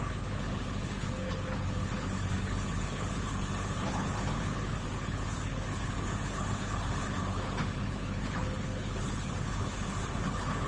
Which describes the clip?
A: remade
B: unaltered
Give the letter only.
A